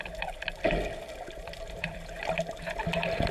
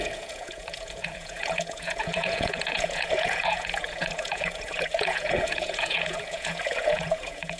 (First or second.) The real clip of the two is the first